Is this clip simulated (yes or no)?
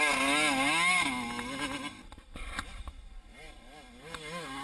no